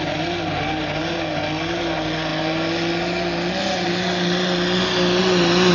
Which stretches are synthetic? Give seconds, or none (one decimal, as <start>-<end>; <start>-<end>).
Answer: none

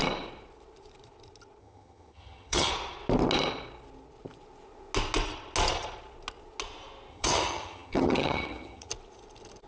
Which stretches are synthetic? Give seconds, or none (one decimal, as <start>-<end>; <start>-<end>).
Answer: 1.6-2.7; 7.1-8.9

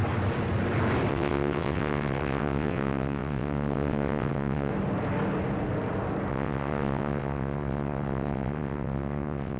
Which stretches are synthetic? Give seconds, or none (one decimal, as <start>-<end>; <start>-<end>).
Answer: 1.1-4.7; 6.3-9.6

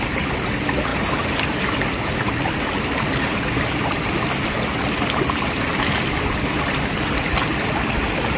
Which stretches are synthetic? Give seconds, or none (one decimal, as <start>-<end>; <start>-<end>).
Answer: 0.9-2.0

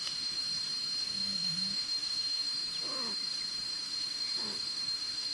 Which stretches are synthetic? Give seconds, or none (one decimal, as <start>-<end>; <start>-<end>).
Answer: 0.0-0.4; 1.0-2.6; 3.9-5.3

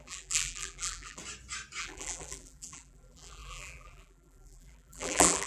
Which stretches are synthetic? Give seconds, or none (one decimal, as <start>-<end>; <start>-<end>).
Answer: 0.0-1.2; 1.8-5.5

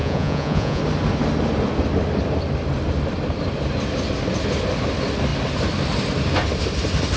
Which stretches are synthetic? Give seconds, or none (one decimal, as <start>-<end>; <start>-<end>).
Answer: 0.0-0.8